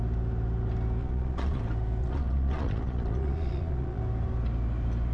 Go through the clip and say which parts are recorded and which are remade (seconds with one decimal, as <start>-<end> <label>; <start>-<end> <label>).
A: 0.0-1.0 recorded; 1.0-1.6 remade; 1.6-2.0 recorded; 2.0-4.0 remade; 4.0-5.1 recorded